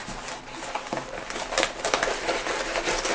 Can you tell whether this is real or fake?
real